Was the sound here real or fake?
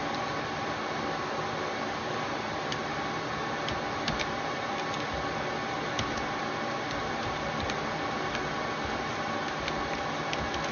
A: real